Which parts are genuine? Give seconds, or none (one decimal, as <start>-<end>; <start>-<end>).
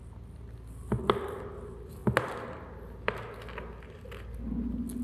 0.0-5.0